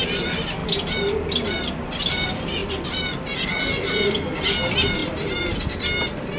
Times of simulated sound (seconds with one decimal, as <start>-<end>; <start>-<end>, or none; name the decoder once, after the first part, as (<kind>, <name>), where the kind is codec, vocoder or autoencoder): 5.0-5.6 (vocoder, BigVGAN v2)